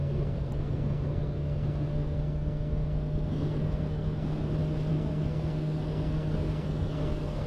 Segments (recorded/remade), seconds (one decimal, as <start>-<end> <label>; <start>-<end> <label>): 0.0-4.5 remade; 4.5-4.9 recorded; 4.9-7.5 remade